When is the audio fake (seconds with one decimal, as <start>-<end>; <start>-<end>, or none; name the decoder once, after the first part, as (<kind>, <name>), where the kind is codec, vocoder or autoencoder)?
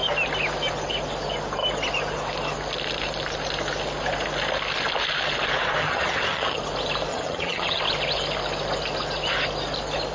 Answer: 5.8-6.6 (vocoder, HiFi-GAN); 7.1-7.8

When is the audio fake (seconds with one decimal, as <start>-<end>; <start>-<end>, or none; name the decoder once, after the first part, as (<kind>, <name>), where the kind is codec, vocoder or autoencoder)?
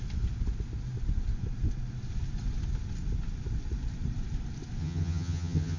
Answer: 4.8-5.8 (vocoder, HiFi-GAN)